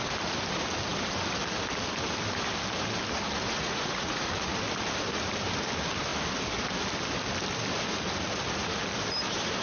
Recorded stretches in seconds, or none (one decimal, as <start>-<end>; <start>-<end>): 0.0-3.5; 4.3-9.6